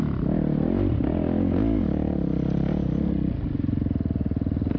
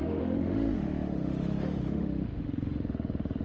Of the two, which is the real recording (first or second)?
first